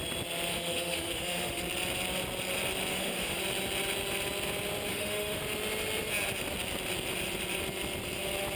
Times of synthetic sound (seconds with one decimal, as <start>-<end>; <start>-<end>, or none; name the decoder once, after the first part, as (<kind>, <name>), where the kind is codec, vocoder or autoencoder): 0.5-1.6 (autoencoder, DAC-VAE); 2.9-3.4; 4.9-5.4